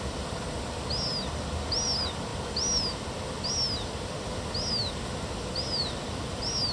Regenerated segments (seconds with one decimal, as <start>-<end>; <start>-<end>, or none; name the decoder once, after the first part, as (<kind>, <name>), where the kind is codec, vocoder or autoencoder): none